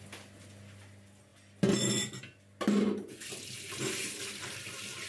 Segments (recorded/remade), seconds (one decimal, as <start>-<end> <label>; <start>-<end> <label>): 0.0-5.1 recorded